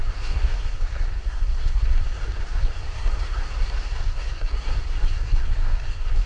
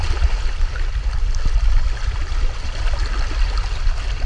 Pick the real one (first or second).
second